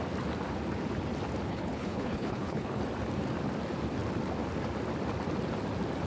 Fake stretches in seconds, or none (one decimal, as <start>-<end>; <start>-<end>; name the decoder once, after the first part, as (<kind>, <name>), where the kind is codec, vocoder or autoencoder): 1.5-2.8 (codec, HILCodec)